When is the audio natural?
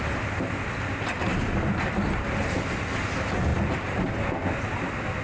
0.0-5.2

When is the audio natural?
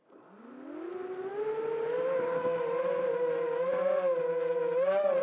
0.0-5.2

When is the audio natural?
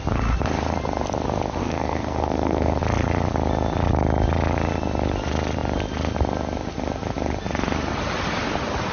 0.0-1.6; 2.8-8.9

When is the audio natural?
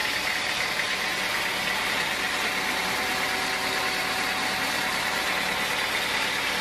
0.0-6.6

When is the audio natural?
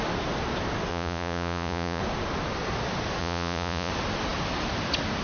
0.0-0.9; 2.0-3.2; 3.9-5.2